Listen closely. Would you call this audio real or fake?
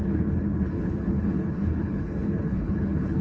fake